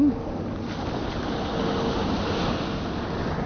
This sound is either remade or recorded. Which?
recorded